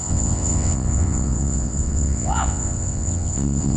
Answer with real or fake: fake